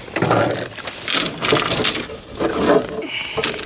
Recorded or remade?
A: recorded